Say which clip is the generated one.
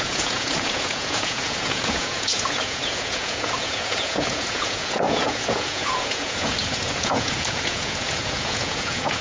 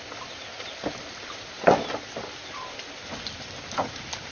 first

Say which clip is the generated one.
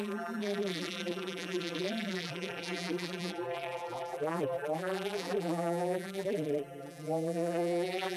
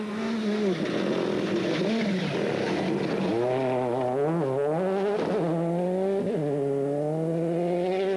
first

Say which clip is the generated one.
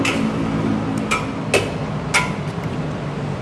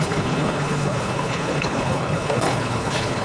second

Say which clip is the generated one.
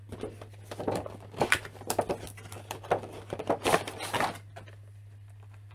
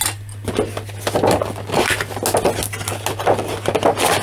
first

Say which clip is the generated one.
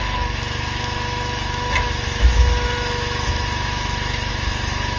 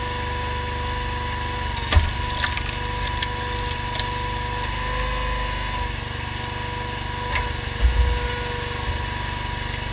first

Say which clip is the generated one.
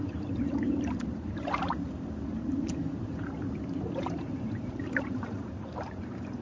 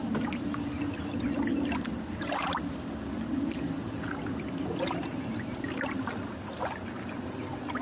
first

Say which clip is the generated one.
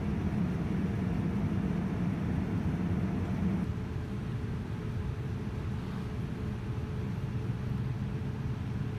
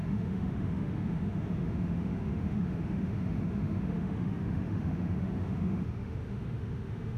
second